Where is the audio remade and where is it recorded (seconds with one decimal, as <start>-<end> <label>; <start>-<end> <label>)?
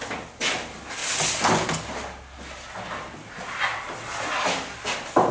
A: 0.0-5.3 recorded